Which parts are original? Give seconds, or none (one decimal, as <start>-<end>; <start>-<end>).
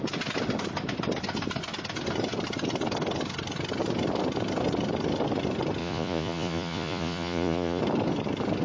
0.0-5.8; 7.8-8.6